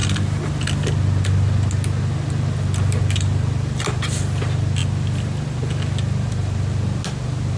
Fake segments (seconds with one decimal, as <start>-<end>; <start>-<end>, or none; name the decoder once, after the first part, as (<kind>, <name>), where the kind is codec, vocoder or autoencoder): none